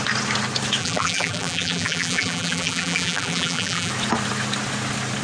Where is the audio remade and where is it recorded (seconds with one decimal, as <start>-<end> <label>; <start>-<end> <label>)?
0.0-0.8 recorded; 0.8-3.9 remade; 3.9-5.2 recorded